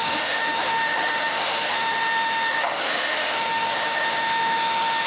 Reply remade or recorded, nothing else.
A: remade